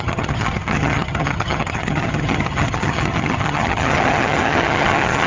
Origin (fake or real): fake